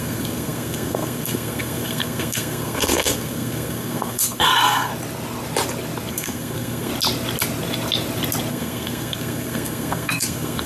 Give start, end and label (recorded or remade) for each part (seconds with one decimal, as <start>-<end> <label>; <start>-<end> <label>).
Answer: 0.0-4.9 remade; 4.9-6.1 recorded; 6.1-6.9 remade; 6.9-8.5 recorded; 8.5-10.7 remade